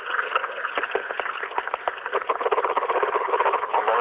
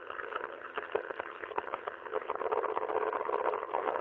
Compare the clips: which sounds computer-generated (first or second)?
second